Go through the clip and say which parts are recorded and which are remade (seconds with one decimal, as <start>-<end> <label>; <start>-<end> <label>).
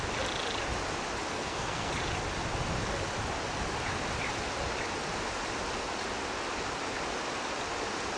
0.0-1.3 recorded; 1.3-1.9 remade; 1.9-8.2 recorded